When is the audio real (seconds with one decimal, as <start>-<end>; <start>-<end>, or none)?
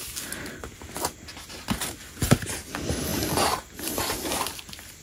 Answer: 0.0-3.1; 4.0-5.0